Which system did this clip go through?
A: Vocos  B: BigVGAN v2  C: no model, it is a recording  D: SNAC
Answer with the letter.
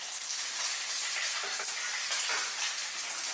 C